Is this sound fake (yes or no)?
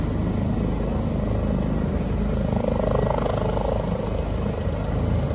no